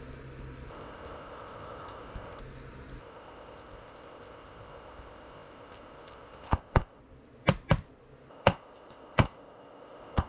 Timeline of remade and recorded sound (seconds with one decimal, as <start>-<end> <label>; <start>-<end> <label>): 0.0-0.7 recorded; 0.7-2.4 remade; 2.4-3.0 recorded; 3.0-7.0 remade; 7.0-8.3 recorded; 8.3-10.3 remade